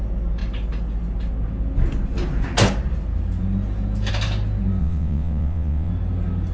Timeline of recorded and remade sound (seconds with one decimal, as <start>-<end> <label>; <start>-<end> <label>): 0.0-4.8 recorded; 4.8-5.9 remade; 5.9-6.5 recorded